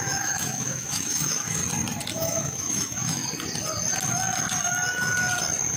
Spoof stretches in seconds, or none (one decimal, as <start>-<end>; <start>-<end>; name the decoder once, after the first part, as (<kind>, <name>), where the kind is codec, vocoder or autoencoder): 0.0-1.6 (autoencoder, DAC-VAE); 2.1-3.2